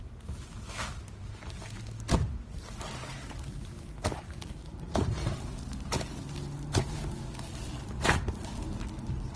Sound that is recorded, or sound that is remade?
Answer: recorded